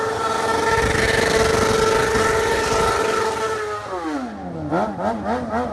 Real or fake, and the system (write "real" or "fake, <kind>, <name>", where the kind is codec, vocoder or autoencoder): real